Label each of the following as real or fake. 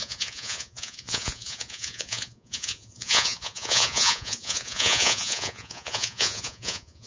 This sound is fake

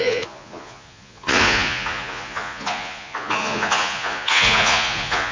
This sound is fake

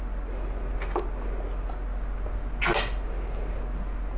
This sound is real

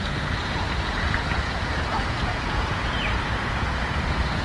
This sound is fake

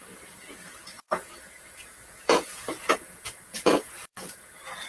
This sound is fake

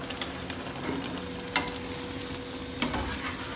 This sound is real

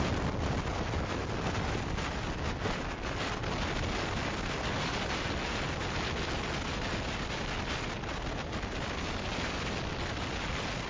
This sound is real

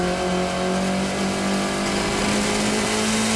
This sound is real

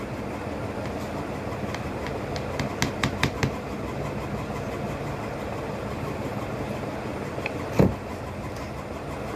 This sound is real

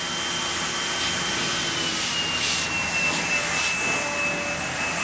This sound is real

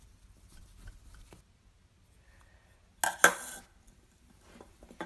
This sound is real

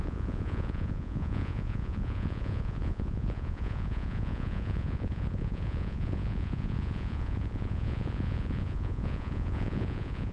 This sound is fake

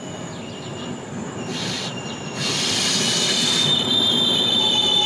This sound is real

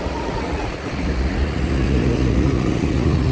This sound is fake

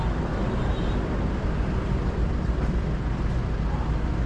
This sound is real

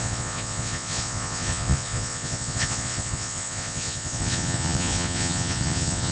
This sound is fake